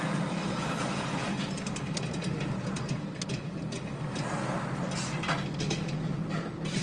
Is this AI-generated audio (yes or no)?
no